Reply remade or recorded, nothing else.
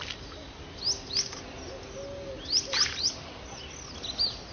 recorded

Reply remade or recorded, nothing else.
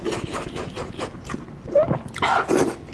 recorded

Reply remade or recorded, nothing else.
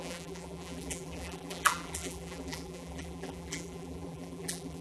remade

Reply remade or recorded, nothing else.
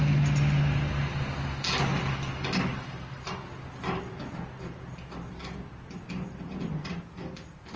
recorded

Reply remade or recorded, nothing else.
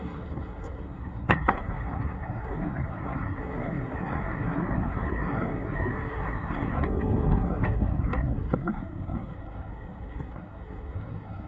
remade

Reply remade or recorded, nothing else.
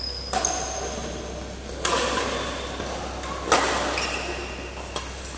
recorded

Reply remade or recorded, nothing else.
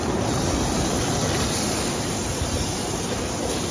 recorded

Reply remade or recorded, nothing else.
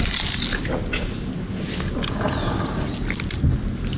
recorded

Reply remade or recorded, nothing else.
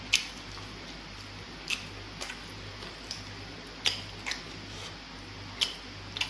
recorded